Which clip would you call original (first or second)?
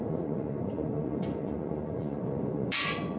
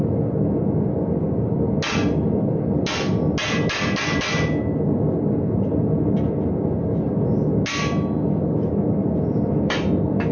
second